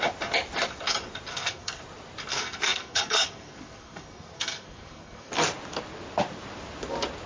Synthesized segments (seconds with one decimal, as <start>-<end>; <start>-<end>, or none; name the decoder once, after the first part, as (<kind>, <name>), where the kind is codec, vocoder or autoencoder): 1.3-1.8 (codec, SNAC); 2.3-5.3